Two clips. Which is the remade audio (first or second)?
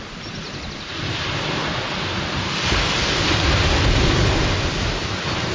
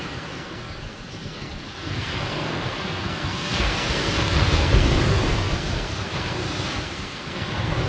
second